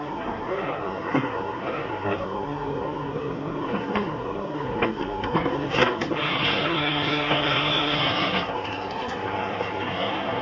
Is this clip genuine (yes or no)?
no